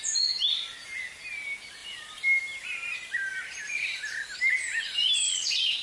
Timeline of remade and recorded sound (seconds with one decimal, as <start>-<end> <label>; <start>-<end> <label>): 0.0-1.8 recorded; 1.8-5.3 remade; 5.3-5.8 recorded